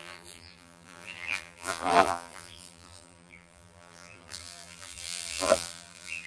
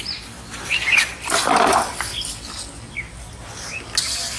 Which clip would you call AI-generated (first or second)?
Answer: first